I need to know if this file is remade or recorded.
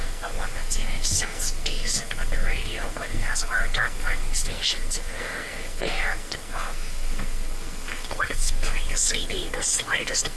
remade